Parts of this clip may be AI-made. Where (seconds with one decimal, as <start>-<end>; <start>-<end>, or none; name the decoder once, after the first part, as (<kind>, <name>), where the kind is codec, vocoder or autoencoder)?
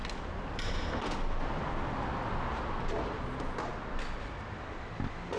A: none